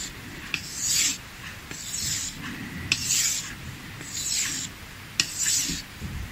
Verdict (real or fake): real